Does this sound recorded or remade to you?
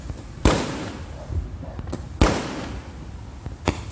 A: recorded